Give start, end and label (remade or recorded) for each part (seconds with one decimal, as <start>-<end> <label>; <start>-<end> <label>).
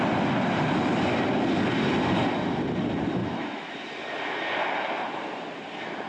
0.0-3.2 recorded; 3.2-3.7 remade; 3.7-6.1 recorded